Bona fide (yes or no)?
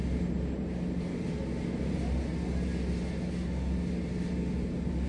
yes